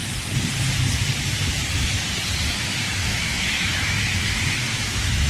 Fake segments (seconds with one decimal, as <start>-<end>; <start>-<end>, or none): 3.0-4.0; 4.6-5.3